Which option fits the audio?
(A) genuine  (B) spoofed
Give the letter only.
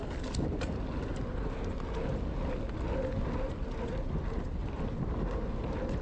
A